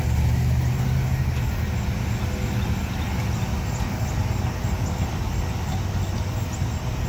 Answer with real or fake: real